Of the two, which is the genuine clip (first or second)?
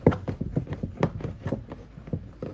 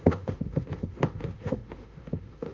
first